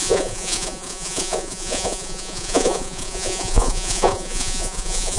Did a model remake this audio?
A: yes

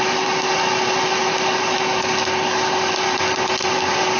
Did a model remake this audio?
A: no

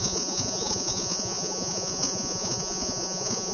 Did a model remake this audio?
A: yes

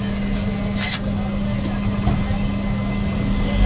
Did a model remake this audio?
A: no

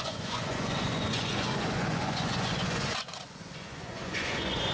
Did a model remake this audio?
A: yes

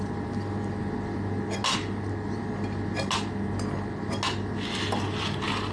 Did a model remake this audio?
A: no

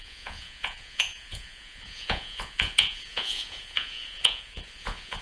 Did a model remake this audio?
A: yes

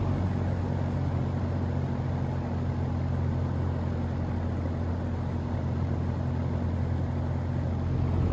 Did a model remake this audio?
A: no